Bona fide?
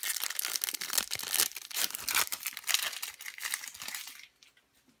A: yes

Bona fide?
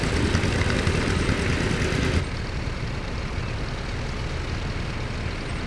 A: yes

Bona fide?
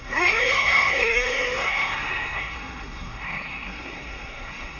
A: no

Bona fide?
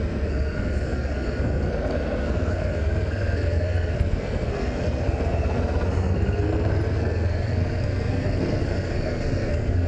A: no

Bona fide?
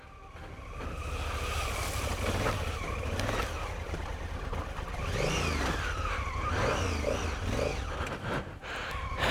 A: yes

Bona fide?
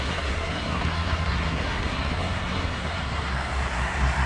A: no